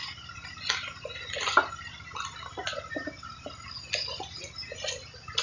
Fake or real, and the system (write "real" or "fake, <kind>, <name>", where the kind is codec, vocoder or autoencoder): real